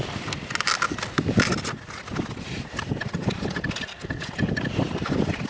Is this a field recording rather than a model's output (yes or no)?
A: yes